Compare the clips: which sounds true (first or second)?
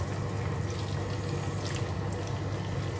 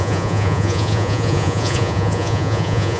first